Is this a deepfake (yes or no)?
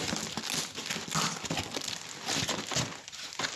no